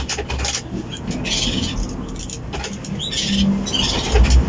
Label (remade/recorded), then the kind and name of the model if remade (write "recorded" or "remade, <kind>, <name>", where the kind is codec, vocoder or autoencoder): recorded